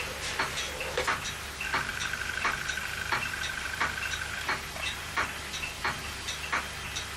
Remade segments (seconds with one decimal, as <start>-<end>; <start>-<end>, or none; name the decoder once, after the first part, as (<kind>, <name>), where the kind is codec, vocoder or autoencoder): 1.9-5.3 (vocoder, BigVGAN v2)